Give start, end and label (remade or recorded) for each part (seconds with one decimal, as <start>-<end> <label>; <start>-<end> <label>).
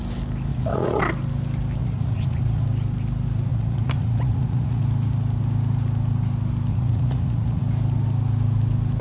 0.0-0.5 recorded; 0.5-1.0 remade; 1.0-1.8 recorded; 1.8-2.6 remade; 2.6-3.5 recorded; 3.5-4.8 remade; 4.8-6.7 recorded; 6.7-7.6 remade; 7.6-9.0 recorded